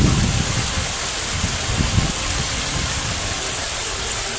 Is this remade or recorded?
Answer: recorded